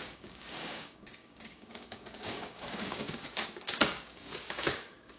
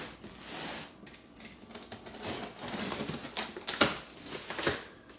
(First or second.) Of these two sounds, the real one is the second